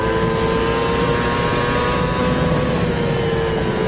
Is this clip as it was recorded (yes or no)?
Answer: yes